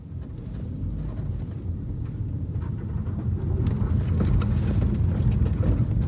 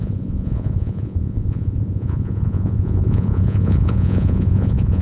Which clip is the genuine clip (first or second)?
first